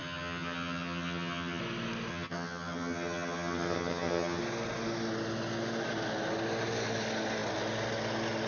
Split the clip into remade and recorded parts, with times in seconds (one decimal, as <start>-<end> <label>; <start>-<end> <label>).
0.0-1.6 remade; 1.6-2.1 recorded; 2.1-4.4 remade; 4.4-8.5 recorded